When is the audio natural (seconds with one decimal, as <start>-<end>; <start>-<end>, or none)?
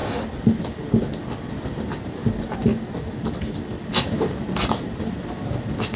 0.0-2.0; 2.7-3.9